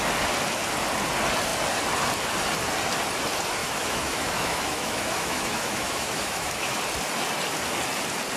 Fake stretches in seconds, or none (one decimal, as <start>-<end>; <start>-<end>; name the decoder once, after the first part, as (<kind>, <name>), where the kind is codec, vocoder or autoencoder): 3.6-6.8 (autoencoder, DAC-VAE)